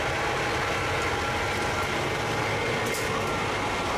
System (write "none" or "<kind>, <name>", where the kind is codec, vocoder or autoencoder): none